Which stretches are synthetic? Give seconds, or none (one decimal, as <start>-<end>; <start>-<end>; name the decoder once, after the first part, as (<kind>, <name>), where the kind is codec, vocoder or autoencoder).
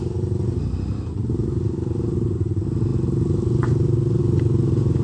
none